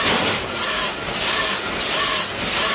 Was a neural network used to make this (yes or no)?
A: no